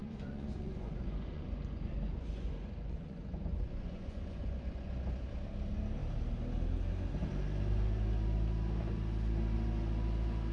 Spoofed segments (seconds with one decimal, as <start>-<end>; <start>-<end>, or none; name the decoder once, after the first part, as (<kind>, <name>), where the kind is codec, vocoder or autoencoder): 0.0-4.9 (vocoder, Vocos)